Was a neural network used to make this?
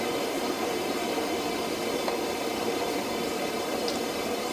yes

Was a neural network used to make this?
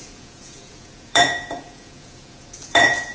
yes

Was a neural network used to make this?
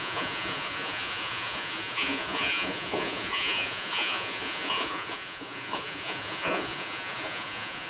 yes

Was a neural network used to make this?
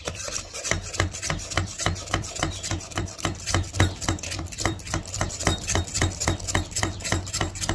yes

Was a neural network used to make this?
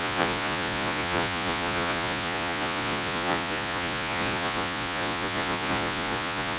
yes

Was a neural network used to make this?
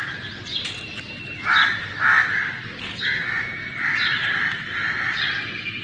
no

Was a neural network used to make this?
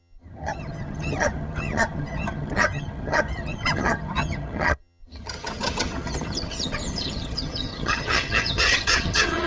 yes